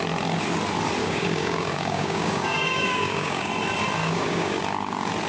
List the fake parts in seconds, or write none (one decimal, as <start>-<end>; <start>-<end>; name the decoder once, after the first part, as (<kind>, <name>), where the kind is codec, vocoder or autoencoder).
1.0-3.5 (codec, DAC); 4.0-4.6